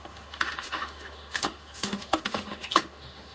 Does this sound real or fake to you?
fake